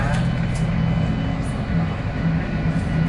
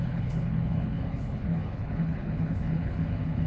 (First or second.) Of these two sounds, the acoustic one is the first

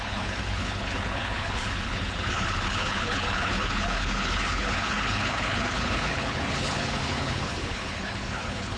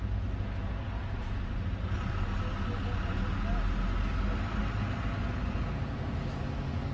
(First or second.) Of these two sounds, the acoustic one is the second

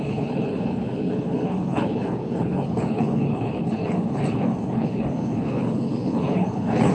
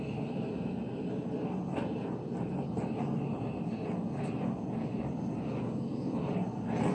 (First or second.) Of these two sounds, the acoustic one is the second